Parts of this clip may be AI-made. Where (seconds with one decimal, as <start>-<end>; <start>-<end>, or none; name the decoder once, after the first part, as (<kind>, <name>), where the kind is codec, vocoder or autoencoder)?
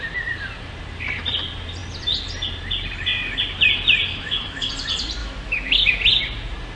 4.1-4.7 (autoencoder, DAC-VAE); 5.2-6.0